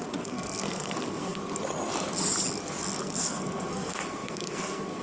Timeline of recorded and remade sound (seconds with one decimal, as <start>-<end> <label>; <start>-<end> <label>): 0.0-1.4 remade; 1.4-3.0 recorded; 3.0-5.0 remade

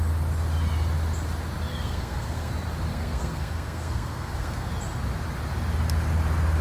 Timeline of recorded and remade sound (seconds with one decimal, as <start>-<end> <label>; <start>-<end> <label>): 0.0-1.7 recorded; 1.7-2.5 remade; 2.5-2.9 recorded; 2.9-4.7 remade; 4.7-6.6 recorded

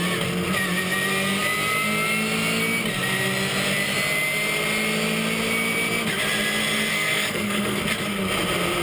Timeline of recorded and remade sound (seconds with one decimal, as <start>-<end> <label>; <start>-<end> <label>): 0.0-6.9 recorded; 6.9-7.8 remade; 7.8-8.8 recorded

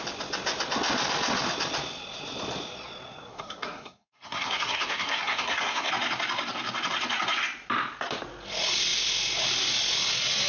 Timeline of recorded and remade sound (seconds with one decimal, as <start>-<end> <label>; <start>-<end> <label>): 0.0-3.3 recorded; 3.3-5.9 remade; 5.9-10.5 recorded

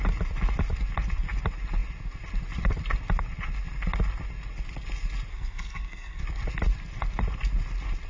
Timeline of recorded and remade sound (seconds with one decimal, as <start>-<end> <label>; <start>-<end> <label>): 0.0-5.3 recorded; 5.3-6.2 remade; 6.2-8.1 recorded

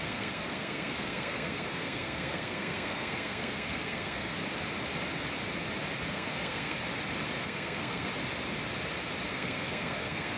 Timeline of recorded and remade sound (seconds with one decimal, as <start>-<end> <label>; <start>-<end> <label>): 0.0-4.4 remade; 4.4-6.1 recorded; 6.1-6.8 remade; 6.8-7.4 recorded; 7.4-8.1 remade; 8.1-9.3 recorded; 9.3-10.4 remade

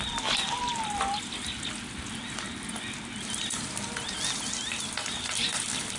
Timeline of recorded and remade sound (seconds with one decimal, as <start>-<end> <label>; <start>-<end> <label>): 0.0-6.0 recorded

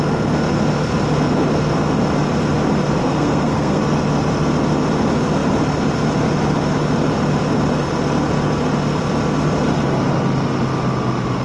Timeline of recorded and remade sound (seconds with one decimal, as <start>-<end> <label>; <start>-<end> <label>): 0.0-3.0 recorded; 3.0-3.8 remade; 3.8-11.4 recorded